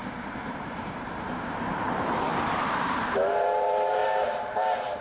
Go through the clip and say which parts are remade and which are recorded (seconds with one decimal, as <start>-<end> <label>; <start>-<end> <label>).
0.0-5.0 remade

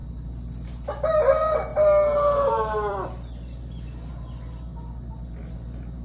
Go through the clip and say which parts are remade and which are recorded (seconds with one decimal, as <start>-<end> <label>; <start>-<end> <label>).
0.0-0.9 remade; 0.9-1.7 recorded; 1.7-4.1 remade; 4.1-6.0 recorded

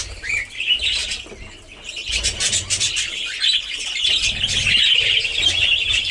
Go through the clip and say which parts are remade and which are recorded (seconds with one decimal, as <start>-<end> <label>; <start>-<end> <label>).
0.0-1.0 remade; 1.0-4.7 recorded; 4.7-6.1 remade

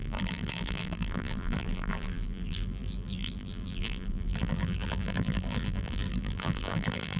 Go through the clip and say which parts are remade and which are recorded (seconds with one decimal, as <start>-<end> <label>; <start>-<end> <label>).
0.0-7.2 remade